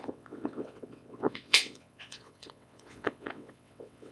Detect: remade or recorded remade